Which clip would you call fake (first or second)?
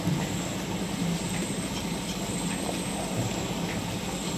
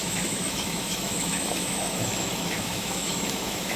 second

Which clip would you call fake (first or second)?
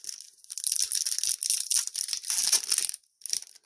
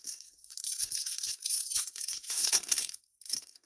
second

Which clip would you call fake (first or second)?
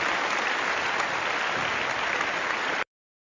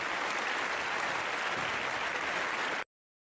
first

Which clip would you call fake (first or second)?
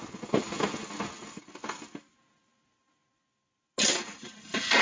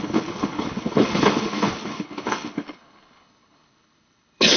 second